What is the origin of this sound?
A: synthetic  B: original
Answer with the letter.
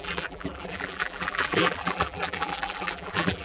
A